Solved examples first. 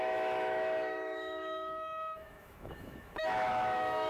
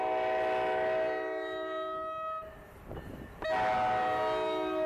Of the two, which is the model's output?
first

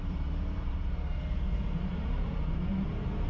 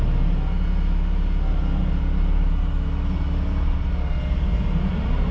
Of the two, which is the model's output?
first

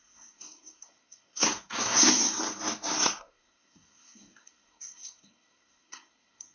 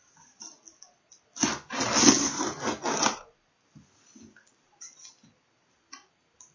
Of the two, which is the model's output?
first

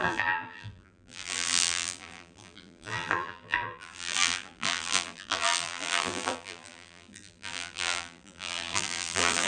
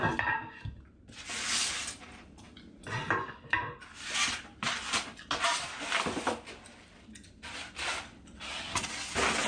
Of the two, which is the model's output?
first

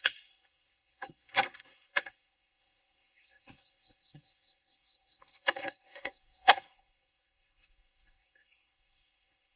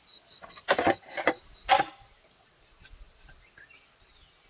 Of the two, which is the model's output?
first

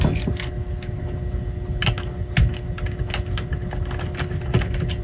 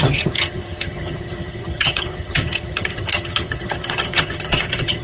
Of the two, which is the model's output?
second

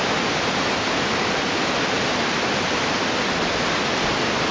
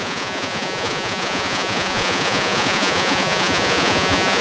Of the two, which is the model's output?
second